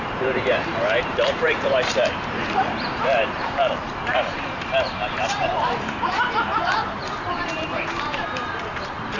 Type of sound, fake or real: fake